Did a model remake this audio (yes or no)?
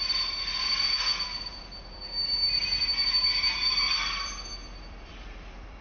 yes